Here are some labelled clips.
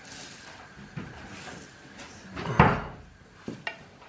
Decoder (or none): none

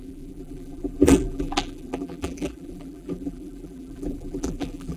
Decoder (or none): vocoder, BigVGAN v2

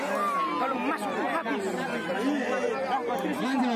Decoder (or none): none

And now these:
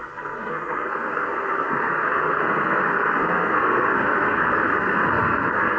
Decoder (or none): codec, SNAC